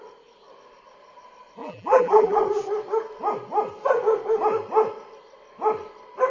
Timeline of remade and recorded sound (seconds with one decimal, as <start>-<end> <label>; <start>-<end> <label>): 0.0-1.6 recorded; 1.6-2.4 remade; 2.4-6.3 recorded